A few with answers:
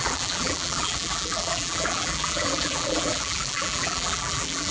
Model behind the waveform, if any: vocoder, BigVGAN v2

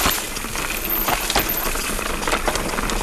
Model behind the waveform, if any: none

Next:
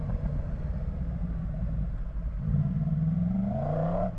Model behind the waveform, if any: vocoder, BigVGAN v2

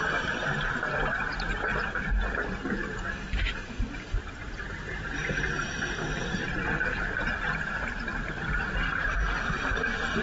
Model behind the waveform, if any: vocoder, BigVGAN v2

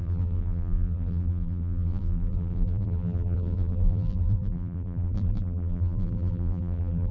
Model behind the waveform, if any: vocoder, BigVGAN v2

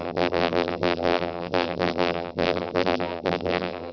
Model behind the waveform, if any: vocoder, BigVGAN v2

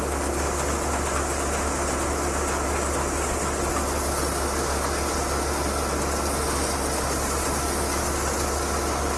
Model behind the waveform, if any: none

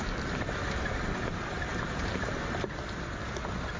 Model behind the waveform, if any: none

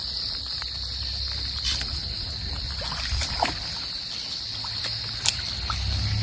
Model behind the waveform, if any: none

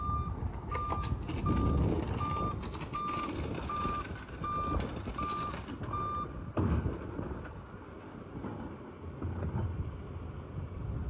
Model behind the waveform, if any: none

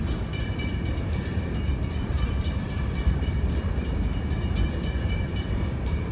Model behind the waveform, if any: vocoder, BigVGAN v2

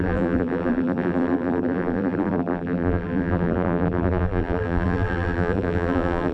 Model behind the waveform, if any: vocoder, BigVGAN v2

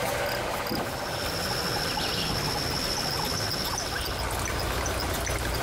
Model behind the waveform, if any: none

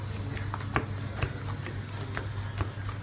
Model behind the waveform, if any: none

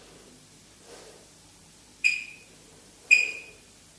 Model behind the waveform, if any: vocoder, BigVGAN v2